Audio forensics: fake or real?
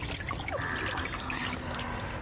real